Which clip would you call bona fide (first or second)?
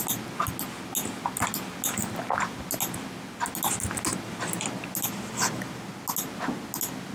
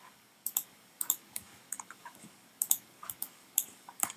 first